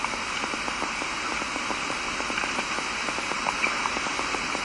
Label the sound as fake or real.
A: real